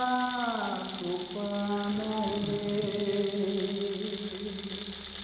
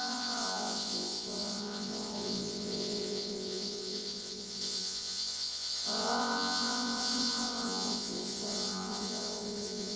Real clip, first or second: first